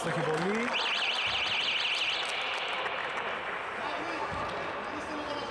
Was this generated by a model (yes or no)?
no